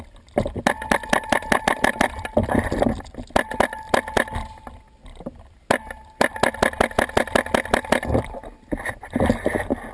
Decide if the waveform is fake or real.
real